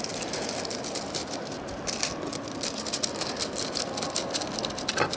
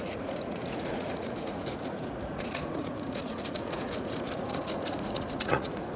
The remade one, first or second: second